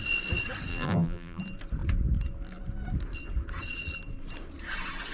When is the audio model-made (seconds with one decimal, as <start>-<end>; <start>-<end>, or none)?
0.7-1.4